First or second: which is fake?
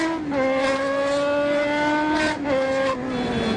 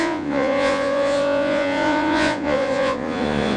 second